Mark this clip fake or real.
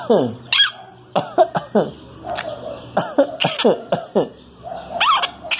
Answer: real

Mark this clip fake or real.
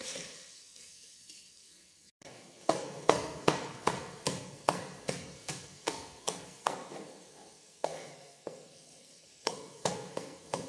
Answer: fake